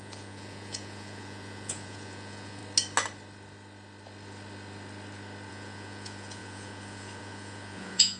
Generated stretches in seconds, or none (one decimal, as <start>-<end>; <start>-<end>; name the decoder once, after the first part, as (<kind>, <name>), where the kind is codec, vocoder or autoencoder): 0.0-2.6 (vocoder, Vocos); 5.5-8.2